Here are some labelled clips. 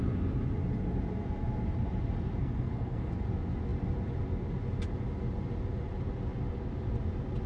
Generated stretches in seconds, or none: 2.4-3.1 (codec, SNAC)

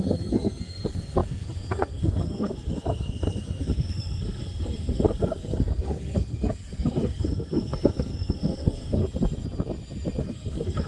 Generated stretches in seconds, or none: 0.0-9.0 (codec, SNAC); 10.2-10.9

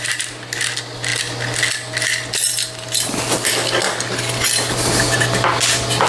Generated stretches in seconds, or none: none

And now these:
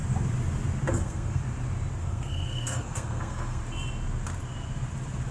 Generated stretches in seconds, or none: 0.9-1.4 (codec, SNAC); 2.0-3.6